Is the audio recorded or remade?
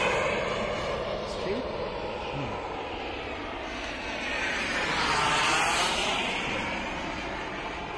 recorded